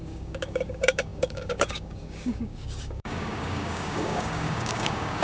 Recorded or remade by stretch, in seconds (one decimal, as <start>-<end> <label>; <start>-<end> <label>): 0.0-5.2 remade